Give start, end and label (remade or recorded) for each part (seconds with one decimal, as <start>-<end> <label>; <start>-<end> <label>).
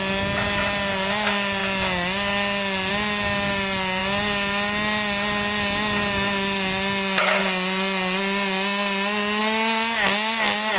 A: 0.0-10.8 recorded